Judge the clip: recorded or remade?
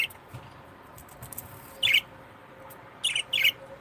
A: recorded